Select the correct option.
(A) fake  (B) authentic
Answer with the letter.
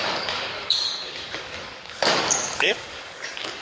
A